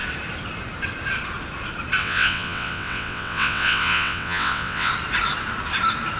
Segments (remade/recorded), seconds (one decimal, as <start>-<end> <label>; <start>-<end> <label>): 0.0-2.0 recorded; 2.0-4.9 remade; 4.9-6.2 recorded